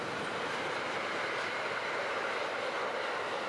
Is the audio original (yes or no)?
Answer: yes